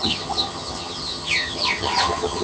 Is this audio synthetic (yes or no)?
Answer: yes